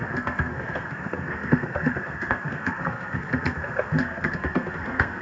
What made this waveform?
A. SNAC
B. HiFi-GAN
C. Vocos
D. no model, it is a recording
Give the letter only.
A